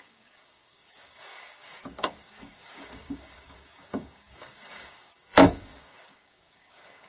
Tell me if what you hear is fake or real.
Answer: fake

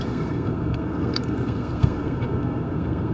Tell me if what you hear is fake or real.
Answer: fake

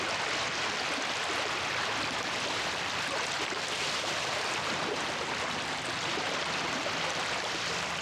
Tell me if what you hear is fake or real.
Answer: real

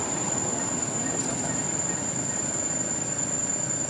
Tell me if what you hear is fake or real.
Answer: real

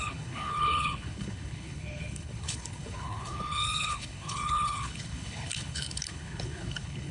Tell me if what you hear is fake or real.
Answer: fake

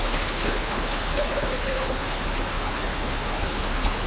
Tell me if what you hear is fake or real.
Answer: fake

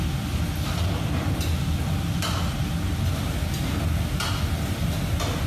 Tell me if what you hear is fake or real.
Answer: real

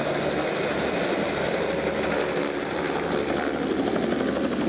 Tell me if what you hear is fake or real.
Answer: real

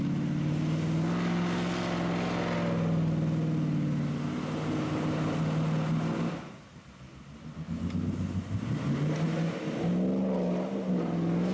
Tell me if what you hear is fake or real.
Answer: real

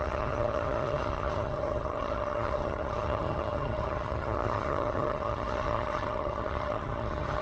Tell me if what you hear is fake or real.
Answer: fake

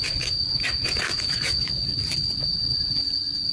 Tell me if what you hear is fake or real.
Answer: fake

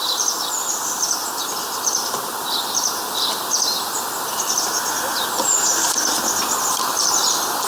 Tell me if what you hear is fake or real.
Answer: real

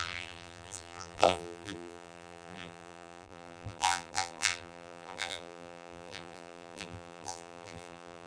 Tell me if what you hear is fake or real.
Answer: fake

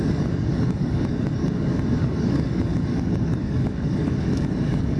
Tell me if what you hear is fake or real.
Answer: fake